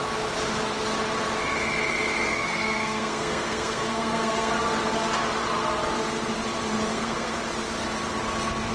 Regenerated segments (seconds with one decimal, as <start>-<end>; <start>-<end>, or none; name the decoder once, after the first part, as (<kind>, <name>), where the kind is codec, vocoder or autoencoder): 2.2-4.5 (codec, SNAC); 6.9-7.4